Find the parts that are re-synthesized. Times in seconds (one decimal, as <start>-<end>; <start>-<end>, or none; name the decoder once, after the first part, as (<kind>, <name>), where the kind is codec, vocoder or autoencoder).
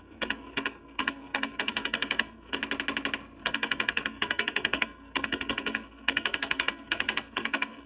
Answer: 0.0-2.6 (codec, SNAC); 3.4-7.9